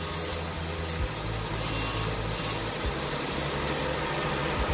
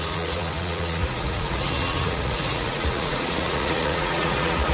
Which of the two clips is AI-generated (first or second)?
second